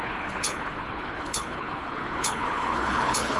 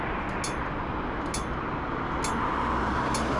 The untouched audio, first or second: second